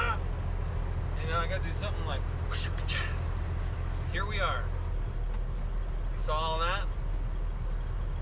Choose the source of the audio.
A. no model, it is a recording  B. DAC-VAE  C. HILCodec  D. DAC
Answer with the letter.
A